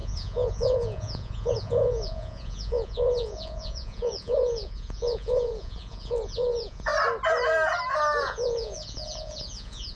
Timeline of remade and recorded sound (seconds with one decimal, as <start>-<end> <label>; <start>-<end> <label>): 0.0-6.9 remade; 6.9-8.2 recorded; 8.2-10.0 remade